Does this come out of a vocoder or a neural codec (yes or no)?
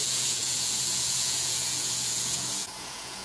yes